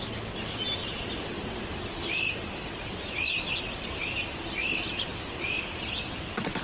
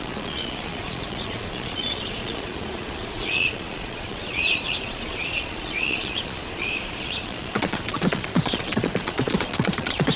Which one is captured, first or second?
first